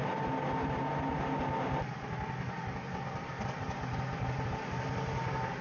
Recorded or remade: recorded